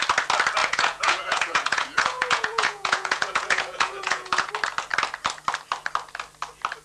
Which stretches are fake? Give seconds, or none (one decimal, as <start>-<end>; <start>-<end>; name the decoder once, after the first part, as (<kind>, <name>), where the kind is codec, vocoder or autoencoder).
0.6-4.5 (vocoder, Vocos)